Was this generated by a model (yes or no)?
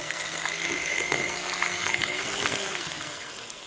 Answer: yes